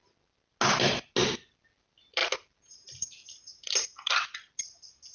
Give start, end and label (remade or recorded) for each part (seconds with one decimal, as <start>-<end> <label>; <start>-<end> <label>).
0.0-5.1 recorded